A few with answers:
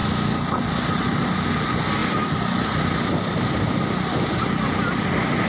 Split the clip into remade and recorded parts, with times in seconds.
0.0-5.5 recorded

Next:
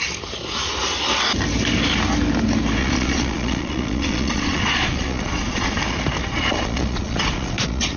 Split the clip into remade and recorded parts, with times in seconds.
0.0-2.8 recorded; 2.8-5.8 remade; 5.8-6.2 recorded; 6.2-8.0 remade

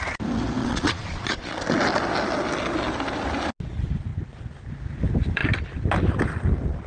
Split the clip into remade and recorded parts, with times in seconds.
0.0-0.6 recorded; 0.6-1.6 remade; 1.6-6.9 recorded

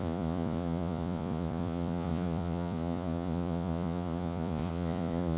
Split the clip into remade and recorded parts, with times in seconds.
0.0-5.4 remade

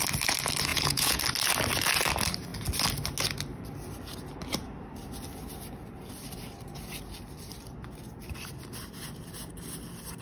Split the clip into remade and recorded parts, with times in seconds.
0.0-0.7 recorded; 0.7-1.2 remade; 1.2-10.2 recorded

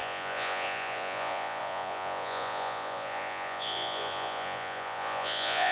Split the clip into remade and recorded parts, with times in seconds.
0.0-5.7 remade